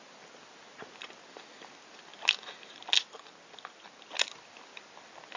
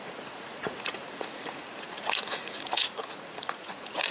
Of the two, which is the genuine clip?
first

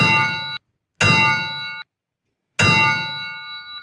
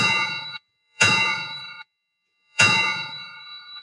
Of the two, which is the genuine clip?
first